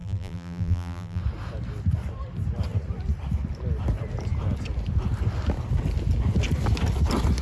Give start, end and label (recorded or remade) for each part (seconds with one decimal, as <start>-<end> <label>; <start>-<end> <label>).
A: 0.0-1.2 remade; 1.2-7.4 recorded